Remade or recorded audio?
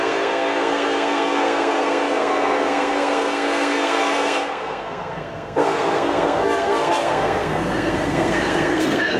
remade